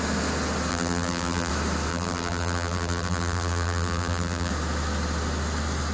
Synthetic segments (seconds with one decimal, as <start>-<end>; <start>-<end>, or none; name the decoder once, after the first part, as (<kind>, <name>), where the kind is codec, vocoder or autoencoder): 0.7-1.5 (vocoder, BigVGAN v2); 1.9-4.5